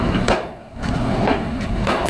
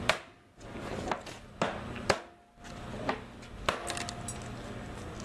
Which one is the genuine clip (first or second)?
second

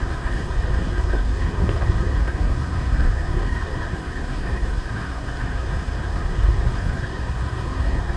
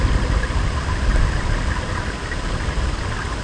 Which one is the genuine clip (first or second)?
second